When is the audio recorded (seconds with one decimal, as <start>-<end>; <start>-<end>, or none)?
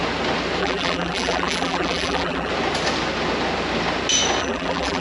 0.0-0.6; 2.5-4.4